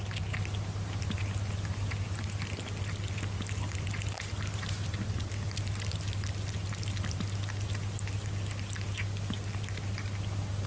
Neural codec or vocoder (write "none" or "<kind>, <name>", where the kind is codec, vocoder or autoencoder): none